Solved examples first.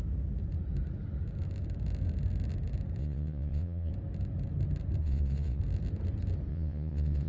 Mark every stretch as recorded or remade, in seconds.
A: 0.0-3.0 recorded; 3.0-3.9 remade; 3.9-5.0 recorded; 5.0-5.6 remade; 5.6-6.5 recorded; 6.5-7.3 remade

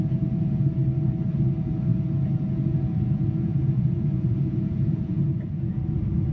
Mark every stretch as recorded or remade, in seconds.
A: 0.0-0.8 remade; 0.8-1.3 recorded; 1.3-6.3 remade

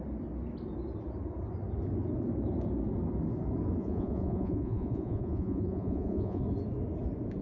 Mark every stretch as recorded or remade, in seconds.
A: 0.0-3.8 recorded; 3.8-6.4 remade; 6.4-7.4 recorded